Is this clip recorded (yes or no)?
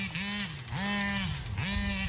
yes